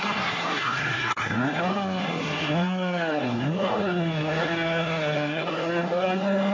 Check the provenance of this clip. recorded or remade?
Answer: remade